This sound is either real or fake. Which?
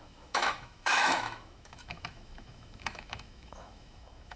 fake